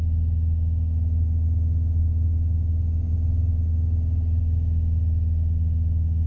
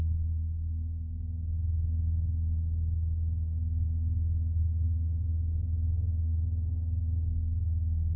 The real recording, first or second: first